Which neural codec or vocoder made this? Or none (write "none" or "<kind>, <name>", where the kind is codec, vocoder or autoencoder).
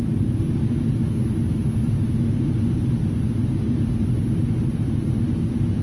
none